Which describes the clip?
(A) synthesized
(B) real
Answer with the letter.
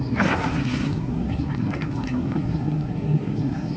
A